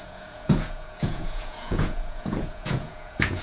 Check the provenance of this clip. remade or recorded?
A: remade